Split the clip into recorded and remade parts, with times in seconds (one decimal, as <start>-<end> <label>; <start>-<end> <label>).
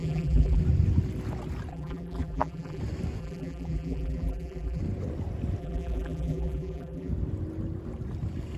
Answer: 0.0-0.6 remade; 0.6-1.7 recorded; 1.7-2.8 remade; 2.8-3.2 recorded; 3.2-4.8 remade; 4.8-5.6 recorded; 5.6-7.1 remade; 7.1-8.6 recorded